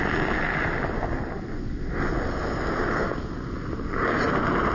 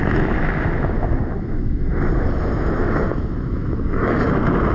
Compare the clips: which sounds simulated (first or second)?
second